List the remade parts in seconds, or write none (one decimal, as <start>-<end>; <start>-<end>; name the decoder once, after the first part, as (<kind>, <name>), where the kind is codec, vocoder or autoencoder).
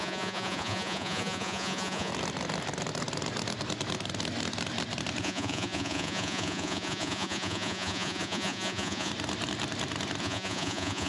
0.0-2.1 (vocoder, Vocos); 5.2-9.1; 10.2-11.1